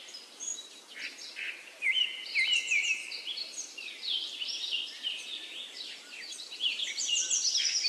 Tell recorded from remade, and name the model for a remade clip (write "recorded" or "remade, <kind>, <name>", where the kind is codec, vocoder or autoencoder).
remade, vocoder, BigVGAN v2